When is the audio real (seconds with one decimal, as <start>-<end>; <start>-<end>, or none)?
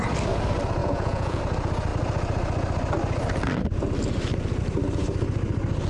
0.0-0.8; 1.4-5.9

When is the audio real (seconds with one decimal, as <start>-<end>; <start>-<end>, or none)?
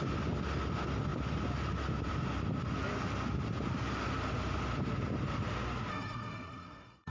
0.0-5.9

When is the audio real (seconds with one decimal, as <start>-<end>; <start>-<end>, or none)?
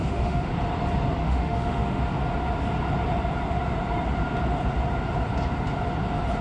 0.5-1.2; 2.0-6.4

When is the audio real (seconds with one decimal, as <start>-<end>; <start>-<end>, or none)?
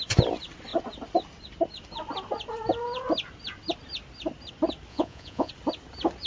0.0-4.9; 5.5-6.3